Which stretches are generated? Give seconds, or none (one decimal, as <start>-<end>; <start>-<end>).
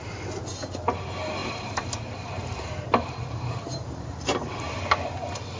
1.4-4.8